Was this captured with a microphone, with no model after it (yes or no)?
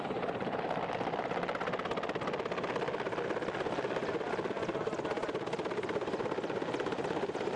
yes